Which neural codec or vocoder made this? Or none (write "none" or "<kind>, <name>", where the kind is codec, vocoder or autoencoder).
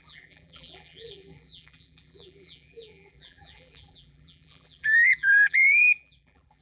vocoder, BigVGAN v2